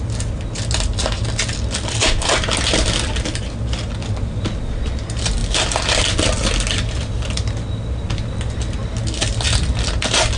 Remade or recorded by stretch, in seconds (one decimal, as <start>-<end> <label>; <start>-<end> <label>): 0.0-10.4 recorded